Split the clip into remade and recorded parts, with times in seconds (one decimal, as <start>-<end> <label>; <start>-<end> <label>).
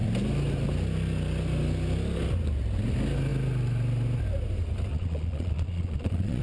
0.0-4.9 recorded; 4.9-6.4 remade